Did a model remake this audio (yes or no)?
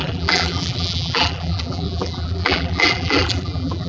yes